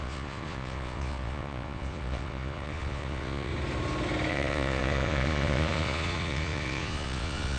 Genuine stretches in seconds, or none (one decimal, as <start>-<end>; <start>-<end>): 3.5-4.3